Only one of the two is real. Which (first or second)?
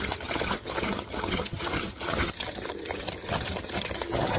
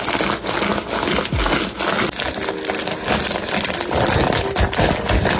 second